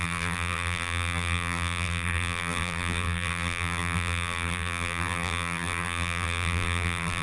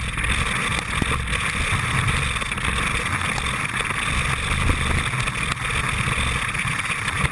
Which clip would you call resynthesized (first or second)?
first